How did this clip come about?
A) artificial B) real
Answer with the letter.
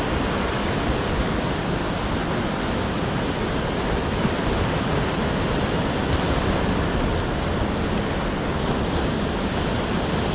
B